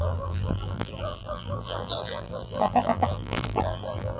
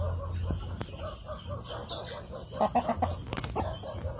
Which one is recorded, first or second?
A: second